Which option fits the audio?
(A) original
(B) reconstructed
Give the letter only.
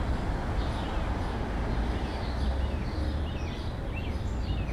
A